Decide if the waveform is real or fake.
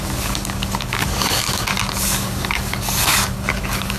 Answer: fake